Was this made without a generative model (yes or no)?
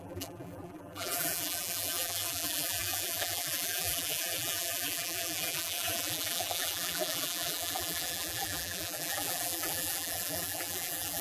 no